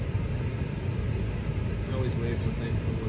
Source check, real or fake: real